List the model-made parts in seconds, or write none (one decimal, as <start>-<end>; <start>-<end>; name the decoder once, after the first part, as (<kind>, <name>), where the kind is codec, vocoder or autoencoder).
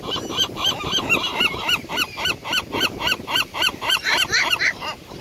0.0-5.2 (vocoder, BigVGAN v2)